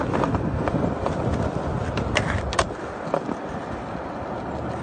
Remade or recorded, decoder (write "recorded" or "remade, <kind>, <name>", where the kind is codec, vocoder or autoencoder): recorded